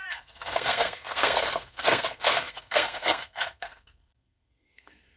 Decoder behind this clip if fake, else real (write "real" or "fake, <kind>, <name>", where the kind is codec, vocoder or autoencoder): fake, codec, SNAC